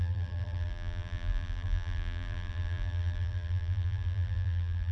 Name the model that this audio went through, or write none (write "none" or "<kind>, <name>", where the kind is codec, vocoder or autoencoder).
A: vocoder, BigVGAN v2